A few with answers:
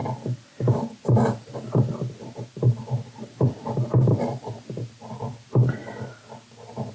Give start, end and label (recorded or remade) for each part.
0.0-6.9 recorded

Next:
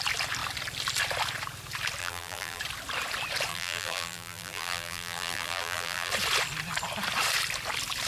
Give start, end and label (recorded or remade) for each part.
0.0-2.0 recorded; 2.0-2.6 remade; 2.6-3.5 recorded; 3.5-6.1 remade; 6.1-8.1 recorded

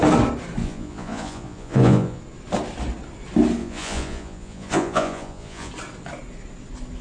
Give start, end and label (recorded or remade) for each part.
0.0-0.6 recorded; 0.6-2.2 remade; 2.2-3.6 recorded; 3.6-5.7 remade; 5.7-7.0 recorded